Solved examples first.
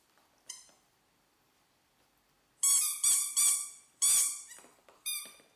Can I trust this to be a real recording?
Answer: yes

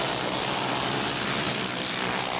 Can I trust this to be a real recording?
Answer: yes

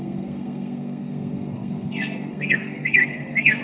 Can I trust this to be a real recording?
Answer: no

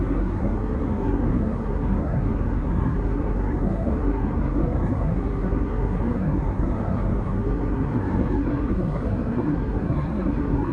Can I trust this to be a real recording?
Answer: no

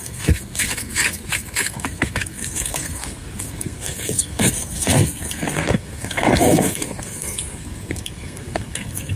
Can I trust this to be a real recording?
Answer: no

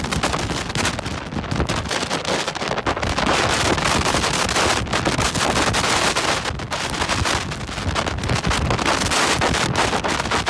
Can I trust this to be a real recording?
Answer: yes